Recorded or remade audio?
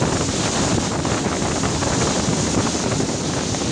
recorded